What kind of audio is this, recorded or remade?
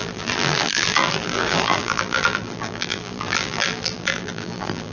remade